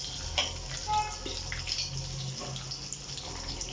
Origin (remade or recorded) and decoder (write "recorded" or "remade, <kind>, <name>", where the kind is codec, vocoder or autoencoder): recorded